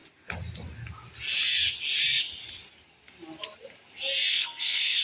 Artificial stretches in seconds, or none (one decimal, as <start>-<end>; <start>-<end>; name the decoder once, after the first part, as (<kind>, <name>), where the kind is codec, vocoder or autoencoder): 4.3-5.0 (codec, SNAC)